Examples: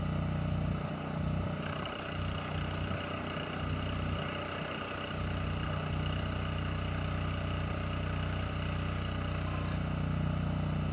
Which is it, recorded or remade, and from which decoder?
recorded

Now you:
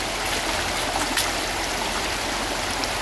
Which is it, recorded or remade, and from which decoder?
recorded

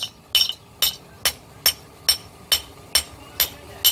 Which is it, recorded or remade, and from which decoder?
recorded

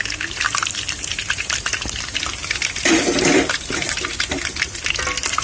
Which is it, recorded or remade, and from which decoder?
recorded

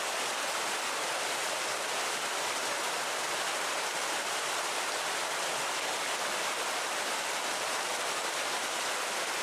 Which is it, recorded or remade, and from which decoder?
recorded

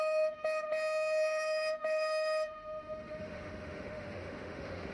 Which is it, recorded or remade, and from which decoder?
remade, autoencoder, DAC-VAE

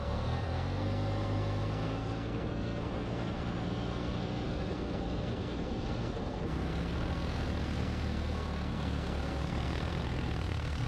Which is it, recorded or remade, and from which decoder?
remade, codec, SNAC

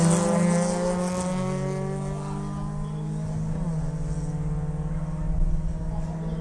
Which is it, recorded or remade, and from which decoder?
recorded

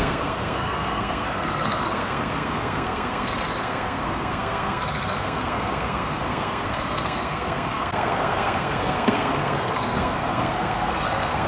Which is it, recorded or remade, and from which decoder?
remade, codec, SNAC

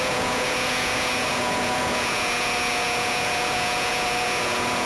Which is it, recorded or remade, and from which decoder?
remade, vocoder, Vocos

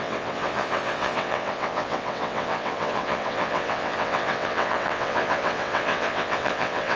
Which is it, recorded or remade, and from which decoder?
remade, vocoder, WaveNeXt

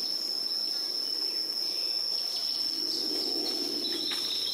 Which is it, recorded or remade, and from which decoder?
recorded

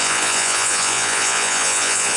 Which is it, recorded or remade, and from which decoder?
remade, vocoder, Vocos